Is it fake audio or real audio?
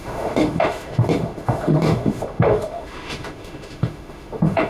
fake